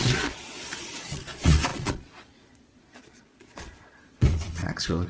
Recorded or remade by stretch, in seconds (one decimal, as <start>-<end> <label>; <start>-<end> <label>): 0.0-5.1 remade